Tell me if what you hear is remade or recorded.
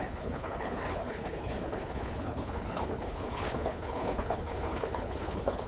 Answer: remade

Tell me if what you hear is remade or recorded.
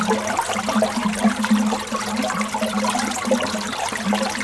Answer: recorded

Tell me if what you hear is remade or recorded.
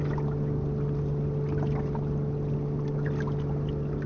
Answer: recorded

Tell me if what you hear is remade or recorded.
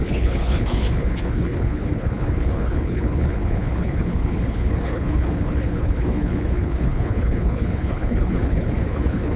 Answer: remade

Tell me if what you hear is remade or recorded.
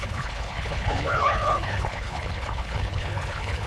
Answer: remade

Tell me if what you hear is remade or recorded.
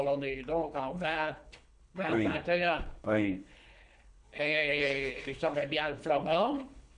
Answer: remade